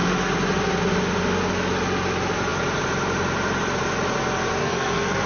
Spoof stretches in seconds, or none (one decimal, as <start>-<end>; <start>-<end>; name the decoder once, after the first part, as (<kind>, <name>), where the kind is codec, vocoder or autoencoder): 4.6-5.3 (codec, SNAC)